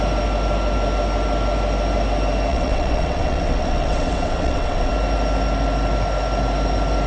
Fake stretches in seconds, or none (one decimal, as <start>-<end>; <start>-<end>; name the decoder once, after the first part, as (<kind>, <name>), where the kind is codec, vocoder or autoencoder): 2.5-4.9 (vocoder, WaveNeXt)